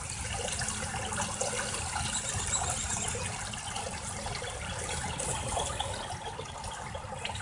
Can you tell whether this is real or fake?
real